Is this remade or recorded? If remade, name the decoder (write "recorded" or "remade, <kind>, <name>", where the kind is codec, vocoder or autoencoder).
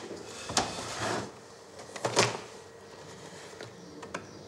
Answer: recorded